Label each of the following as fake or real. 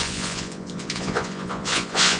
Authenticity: fake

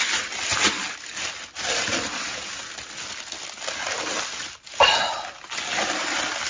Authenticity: real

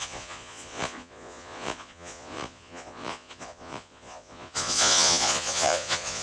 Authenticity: fake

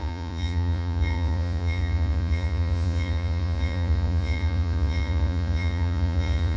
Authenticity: fake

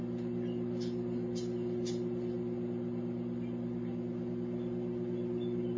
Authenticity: real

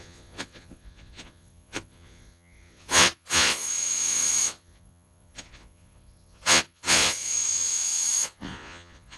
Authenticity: fake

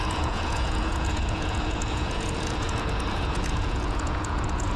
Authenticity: fake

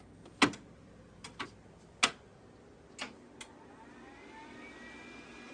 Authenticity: real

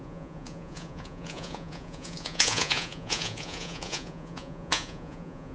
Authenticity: fake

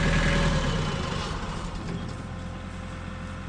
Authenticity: real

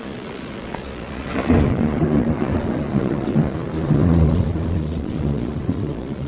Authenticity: fake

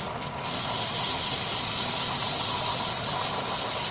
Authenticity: real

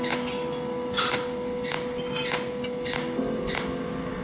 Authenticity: real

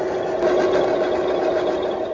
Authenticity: real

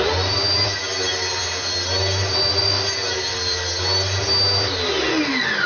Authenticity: real